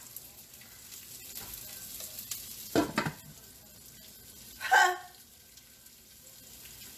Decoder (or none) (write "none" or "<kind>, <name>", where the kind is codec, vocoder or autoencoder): none